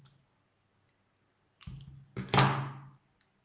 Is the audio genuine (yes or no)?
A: yes